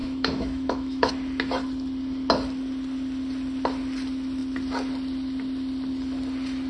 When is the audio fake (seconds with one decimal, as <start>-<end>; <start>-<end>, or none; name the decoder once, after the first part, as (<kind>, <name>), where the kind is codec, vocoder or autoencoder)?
0.0-1.1 (autoencoder, DAC-VAE)